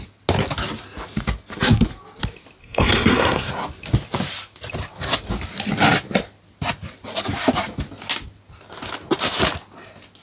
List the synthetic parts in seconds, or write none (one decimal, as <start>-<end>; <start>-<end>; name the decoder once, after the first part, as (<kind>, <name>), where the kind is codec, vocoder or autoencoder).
2.6-3.5 (codec, SNAC)